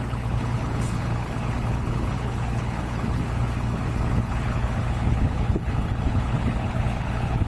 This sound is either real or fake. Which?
fake